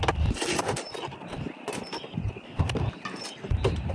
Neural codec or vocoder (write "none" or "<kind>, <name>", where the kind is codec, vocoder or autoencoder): none